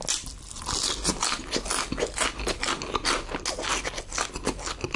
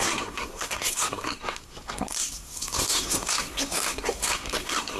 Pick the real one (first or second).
first